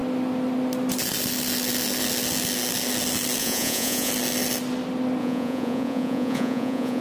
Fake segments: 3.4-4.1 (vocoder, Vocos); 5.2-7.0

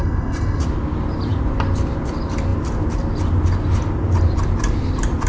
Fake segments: 0.0-0.6 (codec, SNAC)

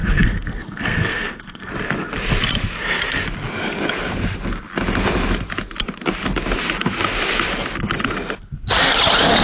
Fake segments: 0.0-1.7 (codec, SNAC)

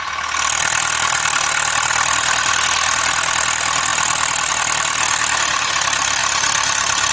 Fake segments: none

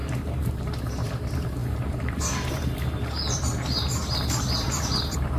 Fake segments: 0.0-5.4 (vocoder, BigVGAN v2)

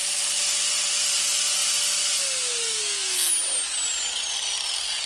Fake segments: 2.6-3.3 (codec, SNAC)